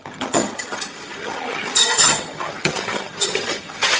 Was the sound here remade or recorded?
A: remade